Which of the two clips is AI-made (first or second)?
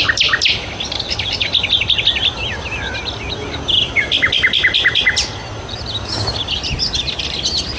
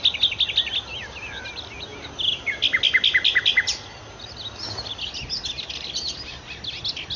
first